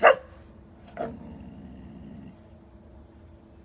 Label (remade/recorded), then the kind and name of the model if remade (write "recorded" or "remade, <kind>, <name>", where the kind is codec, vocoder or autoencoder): recorded